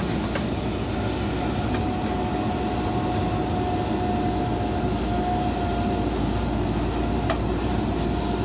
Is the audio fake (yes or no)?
no